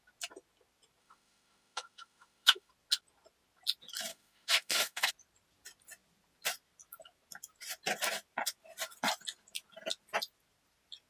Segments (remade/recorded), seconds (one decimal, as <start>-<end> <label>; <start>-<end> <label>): 0.0-1.0 recorded; 1.0-2.7 remade; 2.7-4.1 recorded; 4.1-5.1 remade; 5.1-11.1 recorded